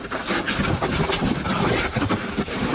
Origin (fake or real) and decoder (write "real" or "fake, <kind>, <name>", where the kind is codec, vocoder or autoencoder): real